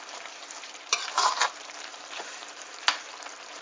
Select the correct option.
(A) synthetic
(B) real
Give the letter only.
A